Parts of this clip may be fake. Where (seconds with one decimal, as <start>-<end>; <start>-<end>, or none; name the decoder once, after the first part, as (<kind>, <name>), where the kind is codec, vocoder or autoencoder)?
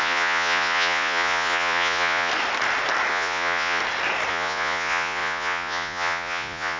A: 0.0-2.3 (vocoder, Vocos); 3.1-3.8; 4.3-6.8